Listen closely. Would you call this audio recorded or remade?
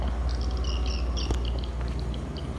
recorded